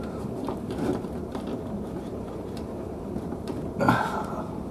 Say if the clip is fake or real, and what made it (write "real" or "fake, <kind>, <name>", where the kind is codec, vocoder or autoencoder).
fake, vocoder, BigVGAN v2